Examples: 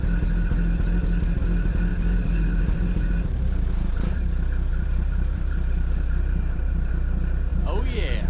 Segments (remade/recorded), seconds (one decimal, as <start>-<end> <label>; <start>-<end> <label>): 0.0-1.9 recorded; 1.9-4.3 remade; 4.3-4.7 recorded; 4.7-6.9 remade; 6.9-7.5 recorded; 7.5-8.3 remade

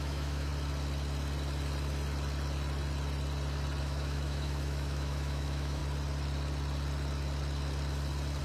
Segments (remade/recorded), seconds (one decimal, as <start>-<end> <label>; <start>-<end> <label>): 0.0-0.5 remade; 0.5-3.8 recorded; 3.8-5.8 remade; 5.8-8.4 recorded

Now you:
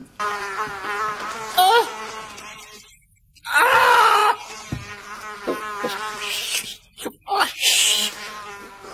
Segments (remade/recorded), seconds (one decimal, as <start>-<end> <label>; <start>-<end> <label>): 0.0-0.7 remade; 0.7-8.9 recorded

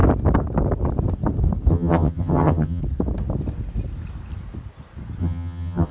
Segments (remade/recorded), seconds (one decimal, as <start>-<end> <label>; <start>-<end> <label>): 0.0-1.7 recorded; 1.7-2.8 remade; 2.8-5.2 recorded; 5.2-5.9 remade

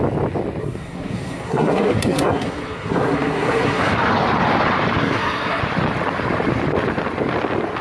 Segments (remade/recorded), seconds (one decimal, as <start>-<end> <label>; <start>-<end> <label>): 0.0-0.6 recorded; 0.6-3.9 remade; 3.9-5.0 recorded; 5.0-5.6 remade; 5.6-7.8 recorded